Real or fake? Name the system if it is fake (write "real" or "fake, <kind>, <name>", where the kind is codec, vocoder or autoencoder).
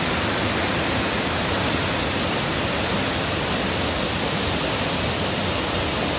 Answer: real